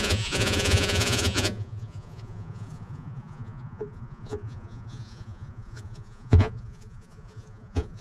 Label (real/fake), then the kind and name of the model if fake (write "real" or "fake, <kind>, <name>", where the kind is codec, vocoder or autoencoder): fake, vocoder, Vocos